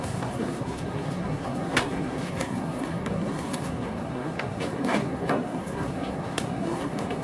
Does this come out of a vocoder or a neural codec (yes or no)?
yes